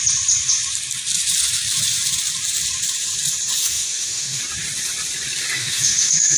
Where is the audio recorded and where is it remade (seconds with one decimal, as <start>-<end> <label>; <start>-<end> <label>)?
0.0-3.6 recorded; 3.6-4.4 remade; 4.4-5.6 recorded; 5.6-6.4 remade